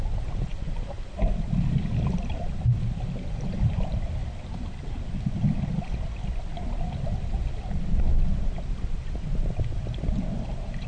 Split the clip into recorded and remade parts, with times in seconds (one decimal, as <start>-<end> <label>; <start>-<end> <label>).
0.0-4.2 recorded; 4.2-5.7 remade; 5.7-10.9 recorded